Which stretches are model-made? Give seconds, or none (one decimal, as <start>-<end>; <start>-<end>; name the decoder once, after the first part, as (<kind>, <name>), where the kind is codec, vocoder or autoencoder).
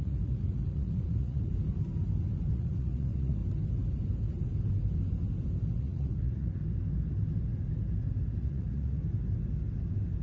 0.0-1.5 (vocoder, Vocos); 2.5-3.4; 5.7-6.6; 8.4-9.0